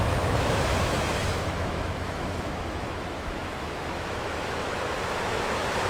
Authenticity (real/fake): fake